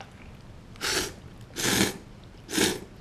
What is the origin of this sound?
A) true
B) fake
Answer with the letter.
A